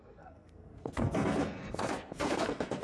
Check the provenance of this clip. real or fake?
fake